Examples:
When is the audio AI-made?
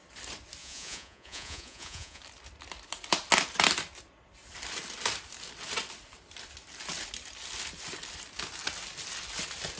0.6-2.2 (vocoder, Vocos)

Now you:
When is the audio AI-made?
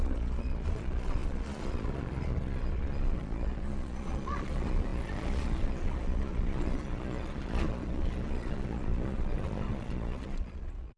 0.0-11.0 (vocoder, Vocos)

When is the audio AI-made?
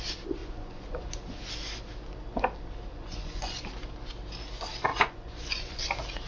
0.4-1.5 (vocoder, Vocos); 2.9-3.6; 4.9-5.8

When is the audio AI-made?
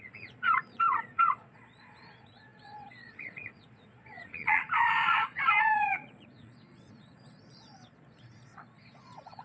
0.0-9.4 (vocoder, Vocos)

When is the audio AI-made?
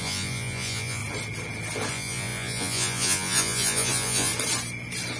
0.0-1.0 (vocoder, Vocos); 1.9-4.3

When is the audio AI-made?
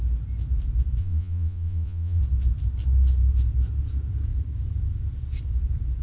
1.0-2.2 (vocoder, Vocos)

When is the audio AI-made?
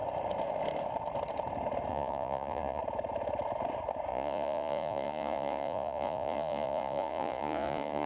1.9-2.8 (vocoder, Vocos); 4.1-8.1